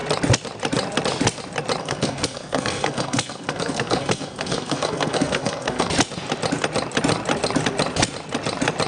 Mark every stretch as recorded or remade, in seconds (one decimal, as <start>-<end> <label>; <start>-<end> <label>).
0.0-1.8 recorded; 1.8-5.9 remade; 5.9-8.9 recorded